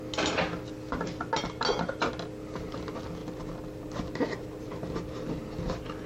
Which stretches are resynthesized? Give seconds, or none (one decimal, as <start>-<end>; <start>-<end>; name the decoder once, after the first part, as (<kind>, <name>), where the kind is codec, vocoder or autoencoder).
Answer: none